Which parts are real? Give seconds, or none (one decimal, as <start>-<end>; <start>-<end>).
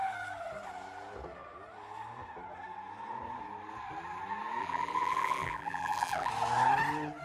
0.0-4.6; 6.3-7.2